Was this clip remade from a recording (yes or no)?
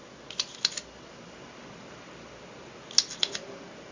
no